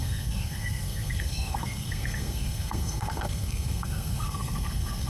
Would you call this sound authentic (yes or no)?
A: no